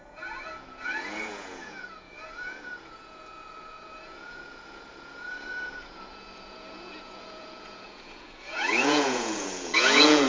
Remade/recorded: remade